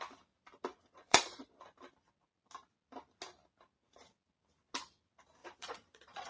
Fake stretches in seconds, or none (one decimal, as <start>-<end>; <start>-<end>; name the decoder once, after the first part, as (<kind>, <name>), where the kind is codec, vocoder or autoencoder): 0.7-1.6 (vocoder, Vocos); 5.4-6.3

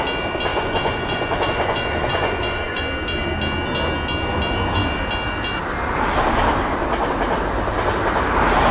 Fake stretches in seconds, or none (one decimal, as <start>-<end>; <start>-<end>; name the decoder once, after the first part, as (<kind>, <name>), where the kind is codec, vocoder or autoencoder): 0.5-2.8 (vocoder, Vocos)

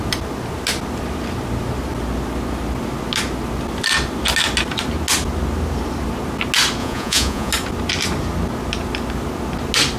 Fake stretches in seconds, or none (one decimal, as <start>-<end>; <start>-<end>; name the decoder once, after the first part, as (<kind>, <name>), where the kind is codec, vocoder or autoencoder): 6.8-7.5 (vocoder, Vocos)

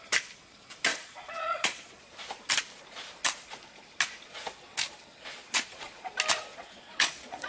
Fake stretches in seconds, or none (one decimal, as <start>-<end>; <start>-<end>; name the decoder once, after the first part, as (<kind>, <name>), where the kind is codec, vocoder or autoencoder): 0.9-2.2 (vocoder, Vocos); 5.4-6.1; 6.5-7.5

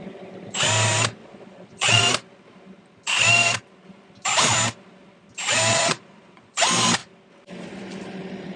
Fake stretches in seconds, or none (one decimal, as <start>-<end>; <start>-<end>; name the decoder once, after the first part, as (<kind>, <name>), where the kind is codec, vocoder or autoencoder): 1.2-2.0 (vocoder, Vocos); 5.7-6.6

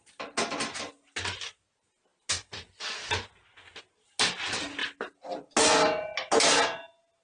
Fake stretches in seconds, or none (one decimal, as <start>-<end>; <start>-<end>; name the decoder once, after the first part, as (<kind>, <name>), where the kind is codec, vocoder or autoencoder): none

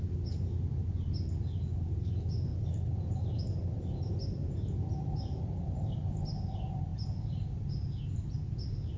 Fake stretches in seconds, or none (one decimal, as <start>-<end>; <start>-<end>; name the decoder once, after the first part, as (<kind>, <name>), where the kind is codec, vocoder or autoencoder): none